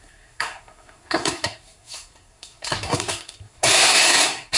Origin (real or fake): fake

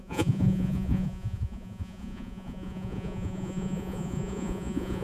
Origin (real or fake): fake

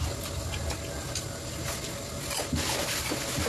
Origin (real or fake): real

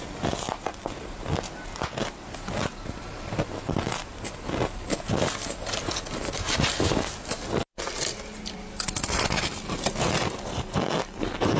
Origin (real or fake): real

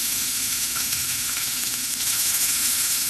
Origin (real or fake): fake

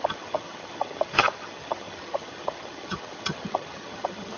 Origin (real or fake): fake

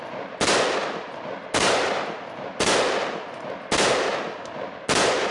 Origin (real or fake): real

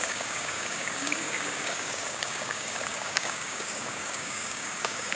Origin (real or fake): fake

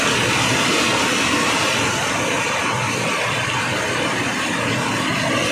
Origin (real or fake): real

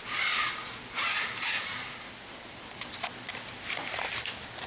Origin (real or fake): real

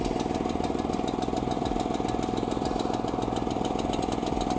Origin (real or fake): real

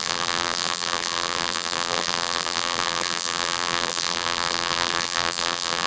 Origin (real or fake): fake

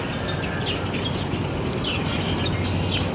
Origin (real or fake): real